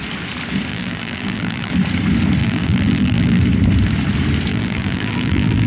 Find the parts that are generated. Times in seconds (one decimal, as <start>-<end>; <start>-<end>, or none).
0.7-1.7; 2.4-3.4; 4.5-5.7